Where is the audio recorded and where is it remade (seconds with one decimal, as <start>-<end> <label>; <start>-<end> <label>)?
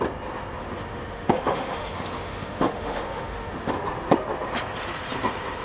0.0-0.6 recorded; 0.6-3.7 remade; 3.7-5.6 recorded